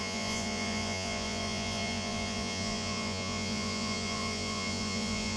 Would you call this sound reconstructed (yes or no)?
yes